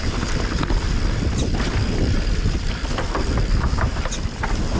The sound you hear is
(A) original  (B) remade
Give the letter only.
B